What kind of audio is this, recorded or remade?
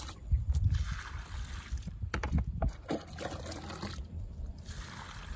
recorded